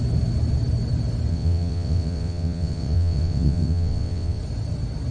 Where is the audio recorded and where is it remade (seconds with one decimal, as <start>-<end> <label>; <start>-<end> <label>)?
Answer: 0.0-1.3 recorded; 1.3-4.4 remade; 4.4-5.1 recorded